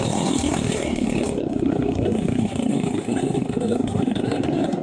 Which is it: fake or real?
fake